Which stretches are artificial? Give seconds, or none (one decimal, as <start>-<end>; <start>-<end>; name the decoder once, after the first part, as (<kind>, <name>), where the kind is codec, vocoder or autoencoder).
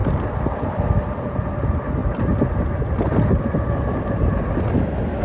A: none